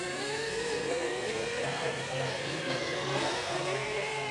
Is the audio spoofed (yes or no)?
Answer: yes